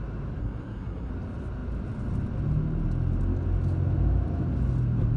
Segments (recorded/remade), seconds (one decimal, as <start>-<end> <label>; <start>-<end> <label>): 0.0-0.4 recorded; 0.4-1.1 remade; 1.1-5.2 recorded